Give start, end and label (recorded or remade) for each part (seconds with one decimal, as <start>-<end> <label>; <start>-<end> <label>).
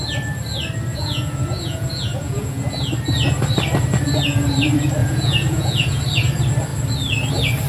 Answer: 0.0-0.9 recorded; 0.9-2.9 remade; 2.9-5.0 recorded; 5.0-6.0 remade; 6.0-7.7 recorded